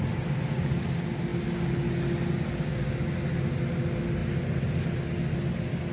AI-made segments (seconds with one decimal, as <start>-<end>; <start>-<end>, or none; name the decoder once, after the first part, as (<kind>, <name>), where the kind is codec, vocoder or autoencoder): none